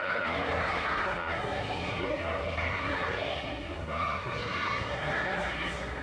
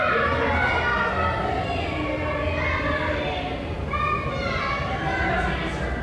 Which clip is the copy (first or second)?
first